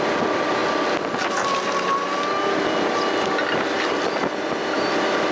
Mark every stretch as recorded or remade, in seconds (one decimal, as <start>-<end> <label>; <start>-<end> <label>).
0.0-5.3 recorded